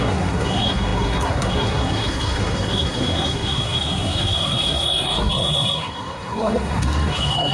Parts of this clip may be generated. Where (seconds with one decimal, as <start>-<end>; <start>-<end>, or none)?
0.0-7.5